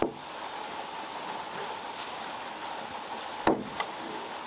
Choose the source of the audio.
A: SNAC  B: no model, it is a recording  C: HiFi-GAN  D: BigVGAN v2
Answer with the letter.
B